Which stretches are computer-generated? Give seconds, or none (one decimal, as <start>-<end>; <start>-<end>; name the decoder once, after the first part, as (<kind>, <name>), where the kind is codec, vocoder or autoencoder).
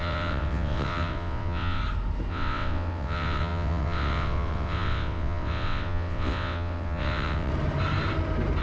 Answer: 0.0-1.8 (vocoder, WaveNeXt); 2.3-7.5